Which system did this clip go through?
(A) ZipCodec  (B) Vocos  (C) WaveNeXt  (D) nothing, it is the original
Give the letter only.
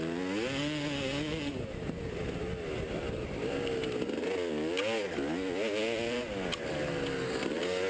D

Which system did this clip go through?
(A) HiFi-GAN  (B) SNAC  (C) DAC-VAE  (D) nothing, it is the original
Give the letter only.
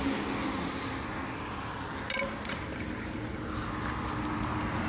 D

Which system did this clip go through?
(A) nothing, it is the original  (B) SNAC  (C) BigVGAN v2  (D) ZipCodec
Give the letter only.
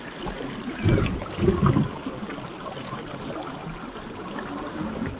A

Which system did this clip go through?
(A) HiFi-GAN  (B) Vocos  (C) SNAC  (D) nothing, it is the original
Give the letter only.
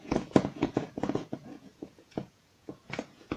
B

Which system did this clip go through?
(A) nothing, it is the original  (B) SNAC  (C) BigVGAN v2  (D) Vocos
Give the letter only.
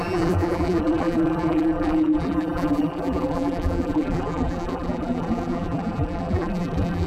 C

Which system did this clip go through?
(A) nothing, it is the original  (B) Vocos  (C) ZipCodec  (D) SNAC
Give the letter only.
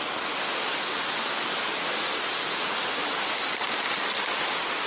A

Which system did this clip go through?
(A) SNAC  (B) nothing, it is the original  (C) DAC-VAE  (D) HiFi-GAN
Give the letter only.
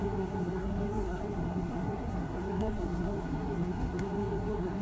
A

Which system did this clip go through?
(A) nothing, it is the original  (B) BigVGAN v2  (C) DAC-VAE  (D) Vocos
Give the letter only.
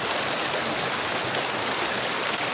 A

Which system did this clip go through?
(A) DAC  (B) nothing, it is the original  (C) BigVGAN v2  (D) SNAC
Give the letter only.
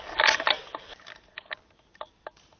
B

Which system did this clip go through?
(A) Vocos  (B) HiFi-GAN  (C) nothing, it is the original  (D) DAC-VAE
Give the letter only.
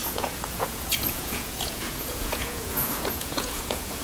A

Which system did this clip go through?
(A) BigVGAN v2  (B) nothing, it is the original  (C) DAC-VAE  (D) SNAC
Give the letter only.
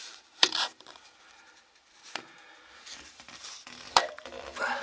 A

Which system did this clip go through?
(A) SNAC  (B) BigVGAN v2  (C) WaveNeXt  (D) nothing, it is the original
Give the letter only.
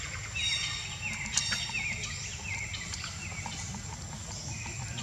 D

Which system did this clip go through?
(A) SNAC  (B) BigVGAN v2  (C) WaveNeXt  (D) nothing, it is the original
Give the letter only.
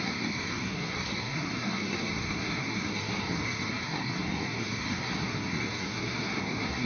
A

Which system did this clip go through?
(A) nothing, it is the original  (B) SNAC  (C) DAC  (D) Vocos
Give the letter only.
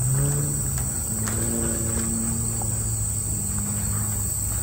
A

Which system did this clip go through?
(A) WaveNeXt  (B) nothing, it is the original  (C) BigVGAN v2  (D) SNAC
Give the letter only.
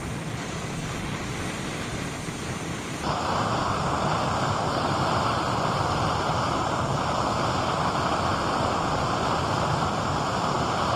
B